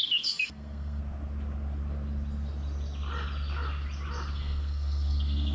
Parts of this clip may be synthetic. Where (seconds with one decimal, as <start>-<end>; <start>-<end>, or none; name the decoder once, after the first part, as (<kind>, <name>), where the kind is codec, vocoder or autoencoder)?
0.0-1.0 (codec, SNAC); 4.3-5.5